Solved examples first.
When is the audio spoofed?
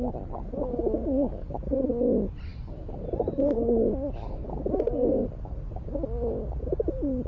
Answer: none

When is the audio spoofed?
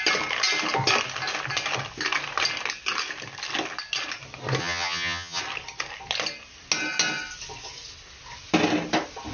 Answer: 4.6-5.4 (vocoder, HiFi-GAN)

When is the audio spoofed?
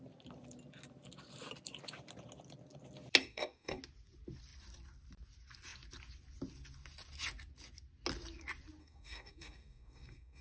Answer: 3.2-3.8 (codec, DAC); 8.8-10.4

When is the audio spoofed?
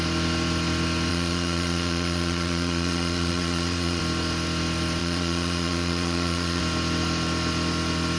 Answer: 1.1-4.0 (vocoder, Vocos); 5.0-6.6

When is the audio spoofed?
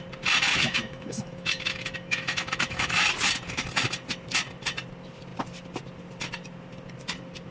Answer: 0.5-3.1 (autoencoder, DAC-VAE)